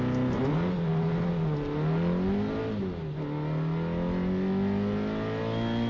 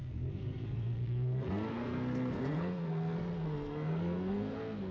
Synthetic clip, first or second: second